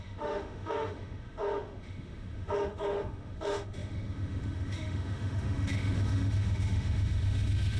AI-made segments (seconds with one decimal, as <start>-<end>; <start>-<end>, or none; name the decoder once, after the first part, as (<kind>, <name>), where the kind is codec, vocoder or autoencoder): 0.0-7.8 (autoencoder, DAC-VAE)